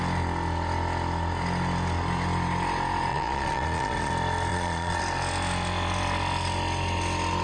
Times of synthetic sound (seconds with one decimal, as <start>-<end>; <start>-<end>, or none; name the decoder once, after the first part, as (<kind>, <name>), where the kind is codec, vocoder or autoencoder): 3.1-4.1 (vocoder, Vocos); 4.5-5.0